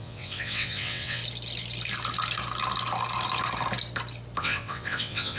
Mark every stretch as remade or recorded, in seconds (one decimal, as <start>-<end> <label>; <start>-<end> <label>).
0.0-1.2 remade; 1.2-4.4 recorded; 4.4-5.4 remade